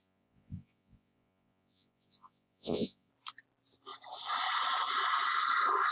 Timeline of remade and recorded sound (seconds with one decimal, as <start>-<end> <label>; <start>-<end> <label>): 0.0-3.1 remade; 3.1-5.9 recorded